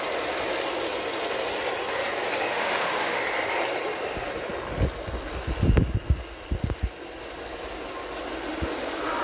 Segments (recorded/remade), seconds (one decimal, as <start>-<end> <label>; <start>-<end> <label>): 0.0-2.5 recorded; 2.5-3.2 remade; 3.2-9.2 recorded